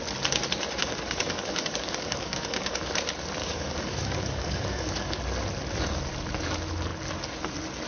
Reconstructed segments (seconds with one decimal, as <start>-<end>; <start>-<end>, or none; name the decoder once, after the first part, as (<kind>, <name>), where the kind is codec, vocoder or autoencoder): 0.8-2.9 (codec, DAC); 3.4-5.2